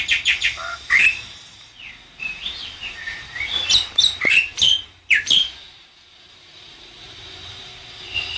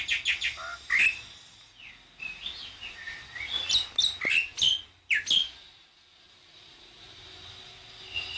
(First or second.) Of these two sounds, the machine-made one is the first